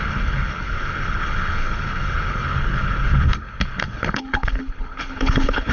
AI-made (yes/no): yes